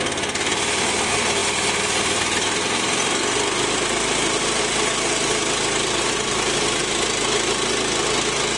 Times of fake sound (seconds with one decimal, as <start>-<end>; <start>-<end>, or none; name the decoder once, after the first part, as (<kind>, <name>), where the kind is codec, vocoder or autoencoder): none